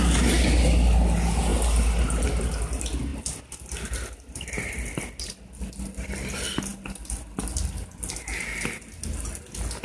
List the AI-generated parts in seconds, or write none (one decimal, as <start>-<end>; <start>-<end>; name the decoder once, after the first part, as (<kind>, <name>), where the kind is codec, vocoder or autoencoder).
none